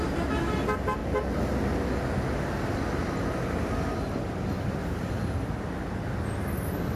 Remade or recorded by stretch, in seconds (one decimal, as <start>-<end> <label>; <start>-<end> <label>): 0.0-7.0 recorded